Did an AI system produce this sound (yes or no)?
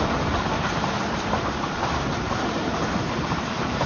yes